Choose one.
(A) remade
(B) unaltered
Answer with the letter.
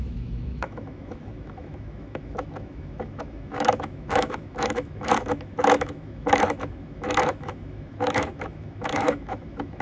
A